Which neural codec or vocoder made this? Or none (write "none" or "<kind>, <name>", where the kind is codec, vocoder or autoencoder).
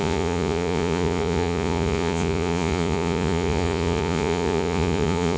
vocoder, Vocos